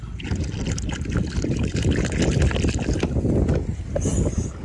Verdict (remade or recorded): recorded